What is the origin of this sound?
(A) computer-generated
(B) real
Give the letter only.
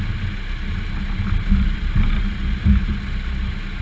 B